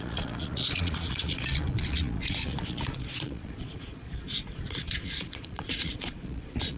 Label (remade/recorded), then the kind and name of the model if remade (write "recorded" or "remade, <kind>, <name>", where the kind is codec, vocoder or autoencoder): remade, vocoder, Vocos